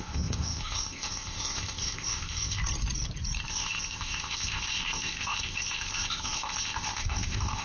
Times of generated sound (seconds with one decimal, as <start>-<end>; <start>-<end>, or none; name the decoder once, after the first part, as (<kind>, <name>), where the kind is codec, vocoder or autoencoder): 0.0-2.6 (codec, ZipCodec); 3.5-7.6